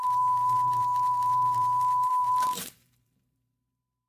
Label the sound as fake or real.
fake